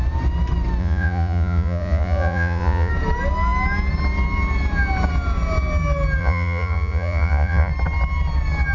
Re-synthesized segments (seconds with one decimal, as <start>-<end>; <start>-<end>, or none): 0.8-2.9; 6.2-7.7